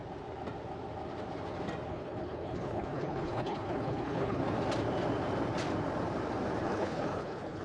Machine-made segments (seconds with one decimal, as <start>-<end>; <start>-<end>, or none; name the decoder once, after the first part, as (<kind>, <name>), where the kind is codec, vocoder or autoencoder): 1.9-4.4 (codec, HILCodec); 6.6-7.6